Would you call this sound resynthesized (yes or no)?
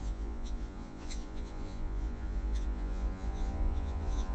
yes